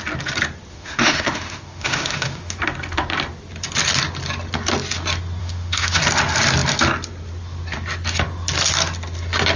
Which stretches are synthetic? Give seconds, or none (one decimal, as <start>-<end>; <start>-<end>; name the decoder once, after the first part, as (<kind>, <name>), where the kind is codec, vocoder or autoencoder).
0.7-2.6 (autoencoder, DAC-VAE); 5.4-6.0